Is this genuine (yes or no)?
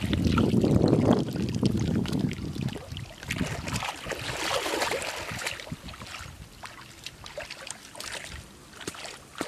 yes